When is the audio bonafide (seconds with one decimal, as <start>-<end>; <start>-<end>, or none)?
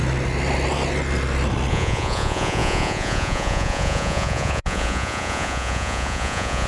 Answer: 0.0-1.7